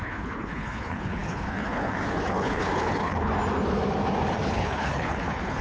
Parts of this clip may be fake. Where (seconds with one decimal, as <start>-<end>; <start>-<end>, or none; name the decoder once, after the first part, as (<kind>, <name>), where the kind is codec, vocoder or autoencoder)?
0.0-3.3 (codec, HILCodec); 4.3-5.6